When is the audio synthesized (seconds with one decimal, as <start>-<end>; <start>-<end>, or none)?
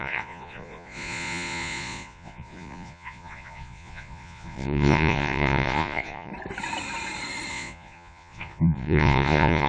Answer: 0.0-6.3; 7.5-9.7